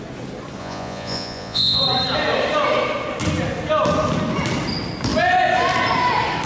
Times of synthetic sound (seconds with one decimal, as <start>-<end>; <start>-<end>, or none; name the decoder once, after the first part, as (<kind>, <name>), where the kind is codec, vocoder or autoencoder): 0.6-1.8 (vocoder, Vocos)